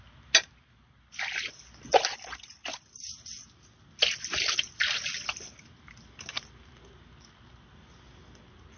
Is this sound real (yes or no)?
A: yes